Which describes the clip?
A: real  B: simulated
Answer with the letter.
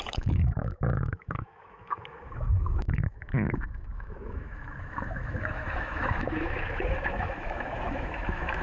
B